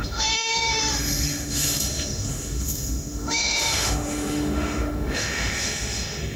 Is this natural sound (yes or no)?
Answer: no